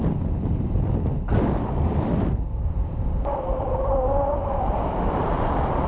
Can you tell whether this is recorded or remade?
remade